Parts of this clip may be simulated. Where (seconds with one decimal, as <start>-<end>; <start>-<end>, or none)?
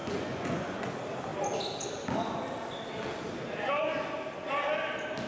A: 0.0-0.9